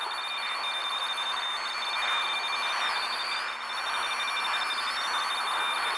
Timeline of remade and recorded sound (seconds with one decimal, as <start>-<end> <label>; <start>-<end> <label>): 0.0-0.8 recorded; 0.8-1.9 remade; 1.9-6.0 recorded